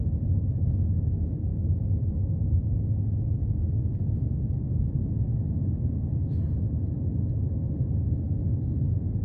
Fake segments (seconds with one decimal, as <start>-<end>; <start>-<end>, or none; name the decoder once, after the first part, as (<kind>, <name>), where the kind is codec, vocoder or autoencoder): 1.5-2.2 (vocoder, BigVGAN v2); 3.8-5.5